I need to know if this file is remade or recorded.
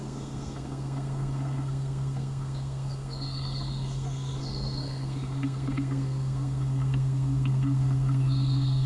remade